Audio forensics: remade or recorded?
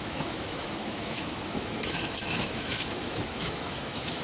remade